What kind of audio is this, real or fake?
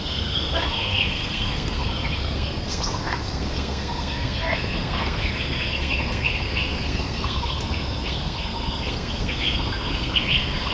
fake